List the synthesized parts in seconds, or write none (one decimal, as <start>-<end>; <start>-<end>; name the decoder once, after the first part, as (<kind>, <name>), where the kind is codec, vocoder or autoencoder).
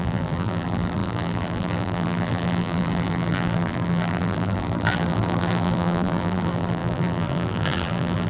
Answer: 0.0-8.3 (vocoder, BigVGAN v2)